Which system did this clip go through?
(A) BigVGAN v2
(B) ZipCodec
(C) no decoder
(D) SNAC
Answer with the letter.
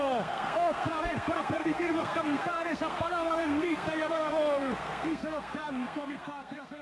D